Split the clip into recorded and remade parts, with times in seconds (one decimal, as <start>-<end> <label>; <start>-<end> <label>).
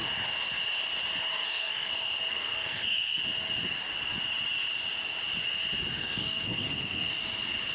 0.0-1.3 recorded; 1.3-1.9 remade; 1.9-2.3 recorded; 2.3-3.2 remade; 3.2-6.0 recorded; 6.0-7.1 remade; 7.1-7.7 recorded